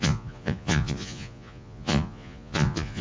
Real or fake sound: fake